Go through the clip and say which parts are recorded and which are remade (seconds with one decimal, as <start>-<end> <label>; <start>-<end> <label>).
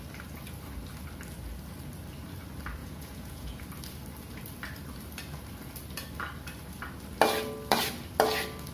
0.0-2.8 recorded; 2.8-3.6 remade; 3.6-8.7 recorded